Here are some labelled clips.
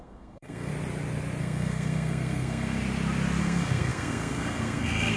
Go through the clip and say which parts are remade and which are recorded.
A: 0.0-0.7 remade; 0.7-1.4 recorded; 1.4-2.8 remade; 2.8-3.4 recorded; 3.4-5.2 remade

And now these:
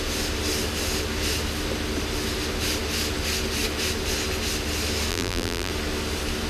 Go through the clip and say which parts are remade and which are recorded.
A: 0.0-5.1 recorded; 5.1-5.7 remade; 5.7-6.5 recorded

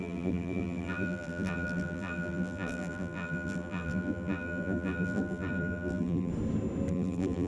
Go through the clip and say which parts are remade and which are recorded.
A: 0.0-6.3 remade; 6.3-6.9 recorded; 6.9-7.5 remade

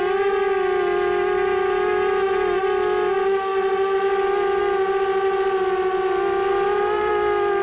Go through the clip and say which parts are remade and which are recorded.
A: 0.0-6.5 recorded; 6.5-7.1 remade; 7.1-7.6 recorded